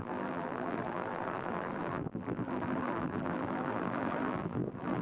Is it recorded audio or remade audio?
remade